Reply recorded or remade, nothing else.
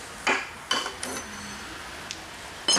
recorded